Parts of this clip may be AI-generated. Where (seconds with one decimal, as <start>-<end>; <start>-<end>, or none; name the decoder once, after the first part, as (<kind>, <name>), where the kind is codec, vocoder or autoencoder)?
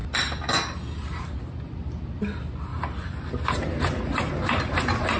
2.7-5.2 (vocoder, BigVGAN v2)